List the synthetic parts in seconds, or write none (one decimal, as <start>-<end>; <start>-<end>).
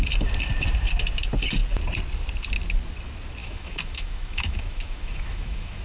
3.4-5.8